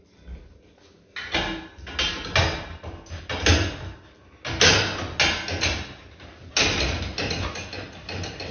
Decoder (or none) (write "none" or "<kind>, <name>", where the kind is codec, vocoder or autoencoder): none